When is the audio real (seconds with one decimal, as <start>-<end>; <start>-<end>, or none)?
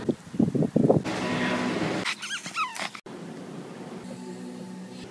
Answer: 0.0-5.1